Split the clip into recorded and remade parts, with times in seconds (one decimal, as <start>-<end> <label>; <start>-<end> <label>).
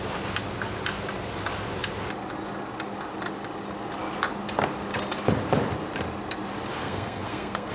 0.0-6.8 recorded; 6.8-7.7 remade